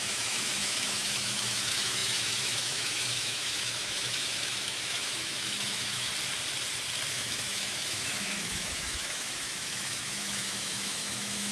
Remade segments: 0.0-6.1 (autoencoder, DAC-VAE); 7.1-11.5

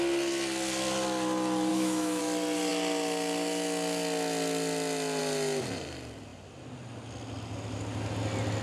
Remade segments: 1.7-2.2 (autoencoder, DAC-VAE)